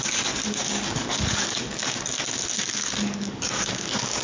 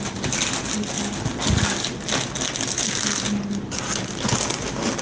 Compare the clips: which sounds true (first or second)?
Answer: second